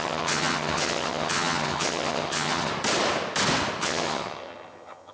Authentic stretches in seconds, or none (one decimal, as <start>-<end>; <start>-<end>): 2.7-3.8